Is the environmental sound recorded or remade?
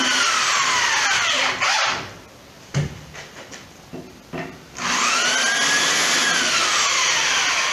recorded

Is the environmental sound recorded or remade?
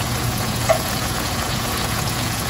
remade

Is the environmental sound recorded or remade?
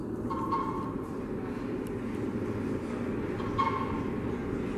recorded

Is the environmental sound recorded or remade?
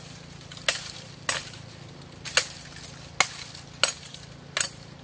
recorded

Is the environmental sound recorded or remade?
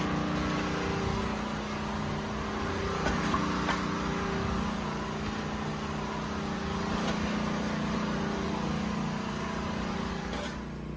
recorded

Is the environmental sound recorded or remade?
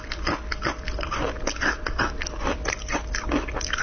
recorded